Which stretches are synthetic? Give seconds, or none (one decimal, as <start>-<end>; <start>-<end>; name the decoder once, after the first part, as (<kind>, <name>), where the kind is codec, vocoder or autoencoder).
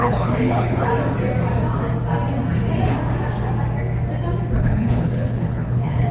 0.0-0.9 (codec, HILCodec); 4.6-6.1